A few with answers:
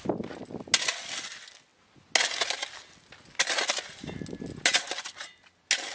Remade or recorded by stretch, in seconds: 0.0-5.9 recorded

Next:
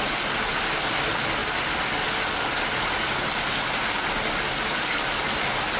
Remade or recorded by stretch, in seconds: 0.0-5.8 recorded